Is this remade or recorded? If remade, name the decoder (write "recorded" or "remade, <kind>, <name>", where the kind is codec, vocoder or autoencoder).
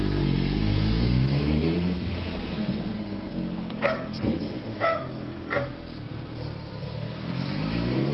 remade, codec, SNAC